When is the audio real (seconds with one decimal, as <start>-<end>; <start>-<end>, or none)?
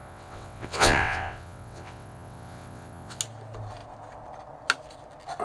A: 3.2-5.4